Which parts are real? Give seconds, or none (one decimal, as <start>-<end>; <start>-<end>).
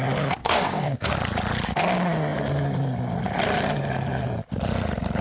0.0-0.4; 1.1-5.2